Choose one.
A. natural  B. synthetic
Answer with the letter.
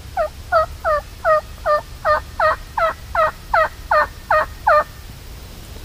A